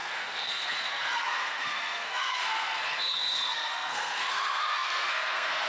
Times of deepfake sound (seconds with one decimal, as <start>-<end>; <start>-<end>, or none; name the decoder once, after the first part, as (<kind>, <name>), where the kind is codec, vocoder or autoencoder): 0.0-5.7 (codec, SNAC)